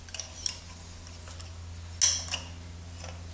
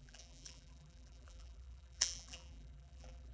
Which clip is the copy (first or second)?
second